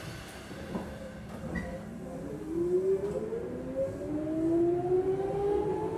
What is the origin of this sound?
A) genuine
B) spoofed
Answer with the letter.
A